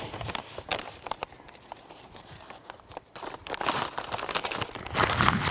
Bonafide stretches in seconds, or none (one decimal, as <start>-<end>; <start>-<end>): 0.0-0.7; 4.0-5.5